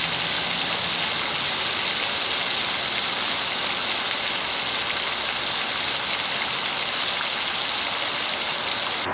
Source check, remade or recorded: recorded